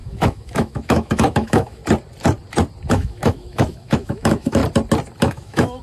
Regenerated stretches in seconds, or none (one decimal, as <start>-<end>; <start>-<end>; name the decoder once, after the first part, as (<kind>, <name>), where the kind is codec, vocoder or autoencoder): 0.0-1.8 (autoencoder, DAC-VAE); 2.9-4.6; 5.2-5.8